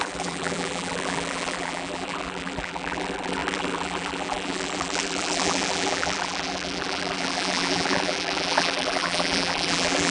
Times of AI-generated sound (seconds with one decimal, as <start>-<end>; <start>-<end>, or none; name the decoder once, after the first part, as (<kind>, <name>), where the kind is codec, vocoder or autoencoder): 0.0-10.1 (vocoder, BigVGAN v2)